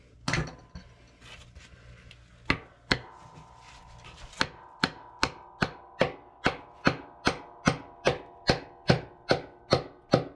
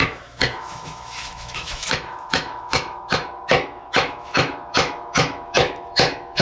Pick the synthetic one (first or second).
second